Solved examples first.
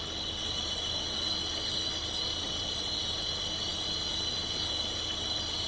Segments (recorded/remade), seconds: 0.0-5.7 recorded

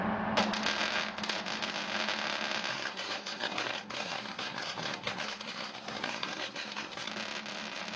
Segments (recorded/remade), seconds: 0.0-2.7 recorded; 2.7-7.1 remade; 7.1-8.0 recorded